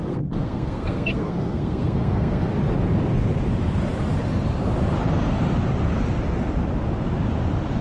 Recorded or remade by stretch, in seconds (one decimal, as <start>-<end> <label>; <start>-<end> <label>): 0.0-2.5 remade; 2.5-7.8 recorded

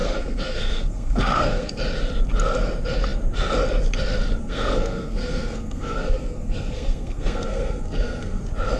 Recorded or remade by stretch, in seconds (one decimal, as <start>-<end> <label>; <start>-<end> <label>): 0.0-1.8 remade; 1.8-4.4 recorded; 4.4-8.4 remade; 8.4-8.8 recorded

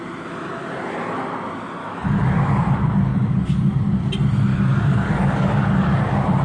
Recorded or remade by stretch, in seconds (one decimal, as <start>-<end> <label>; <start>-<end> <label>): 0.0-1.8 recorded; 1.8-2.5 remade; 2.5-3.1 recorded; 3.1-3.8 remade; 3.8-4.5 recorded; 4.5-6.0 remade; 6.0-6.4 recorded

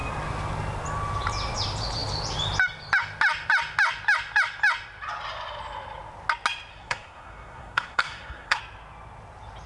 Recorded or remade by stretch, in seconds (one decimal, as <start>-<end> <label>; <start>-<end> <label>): 0.0-6.7 recorded; 6.7-8.6 remade; 8.6-9.7 recorded